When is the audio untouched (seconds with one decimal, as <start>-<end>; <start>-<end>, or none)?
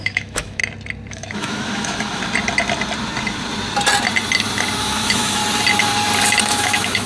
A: 0.6-1.1; 2.2-4.8; 5.4-6.4